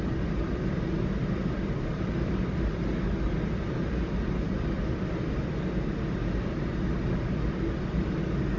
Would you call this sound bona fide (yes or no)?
yes